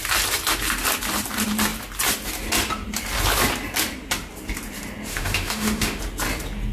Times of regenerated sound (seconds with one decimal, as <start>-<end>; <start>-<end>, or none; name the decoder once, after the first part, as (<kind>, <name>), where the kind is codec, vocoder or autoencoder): 5.1-6.0 (autoencoder, DAC-VAE)